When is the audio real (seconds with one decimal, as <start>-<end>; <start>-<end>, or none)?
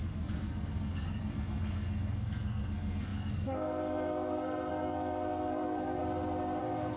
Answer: 6.0-6.6